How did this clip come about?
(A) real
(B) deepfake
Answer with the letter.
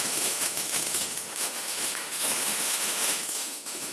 B